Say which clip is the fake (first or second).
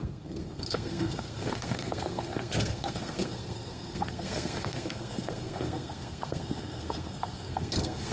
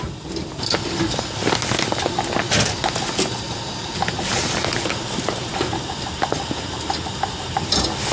first